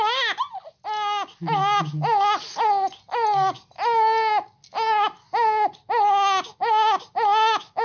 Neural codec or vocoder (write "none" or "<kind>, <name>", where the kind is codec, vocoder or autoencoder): none